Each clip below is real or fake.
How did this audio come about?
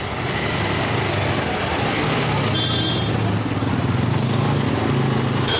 real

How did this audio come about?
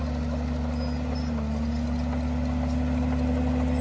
real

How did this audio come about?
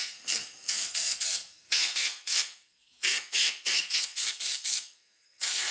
fake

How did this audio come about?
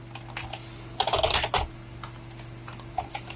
real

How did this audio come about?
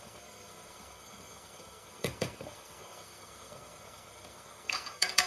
fake